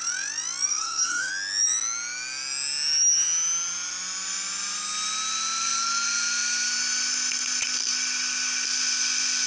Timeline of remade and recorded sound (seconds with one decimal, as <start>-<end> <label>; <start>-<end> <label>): 0.0-0.7 recorded; 0.7-1.3 remade; 1.3-9.5 recorded